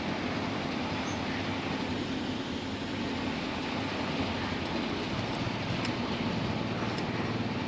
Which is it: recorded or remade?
recorded